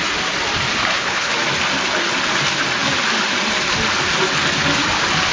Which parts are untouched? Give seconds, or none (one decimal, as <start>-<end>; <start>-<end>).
0.0-0.8; 1.3-5.3